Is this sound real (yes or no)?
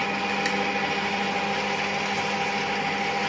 yes